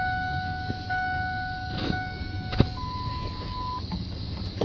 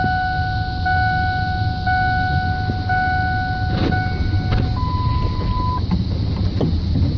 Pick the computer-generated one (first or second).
first